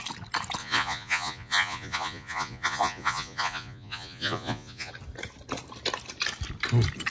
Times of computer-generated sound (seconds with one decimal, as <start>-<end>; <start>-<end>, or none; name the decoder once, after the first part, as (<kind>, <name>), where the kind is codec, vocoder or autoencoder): 0.6-4.9 (vocoder, Vocos)